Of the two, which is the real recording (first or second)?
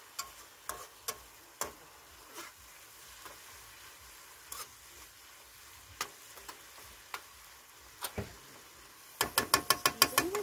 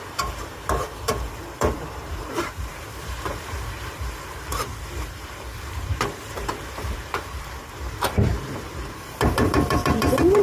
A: first